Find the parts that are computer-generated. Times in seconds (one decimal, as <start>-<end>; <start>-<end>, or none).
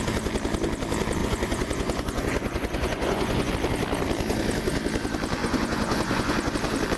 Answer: 1.2-3.5; 5.4-6.5